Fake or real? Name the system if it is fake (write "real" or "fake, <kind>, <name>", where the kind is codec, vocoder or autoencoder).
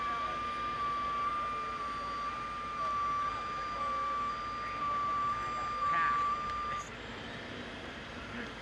real